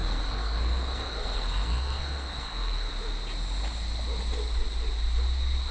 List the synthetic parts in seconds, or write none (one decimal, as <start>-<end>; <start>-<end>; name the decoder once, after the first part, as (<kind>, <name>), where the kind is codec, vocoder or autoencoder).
0.0-2.9 (codec, SNAC)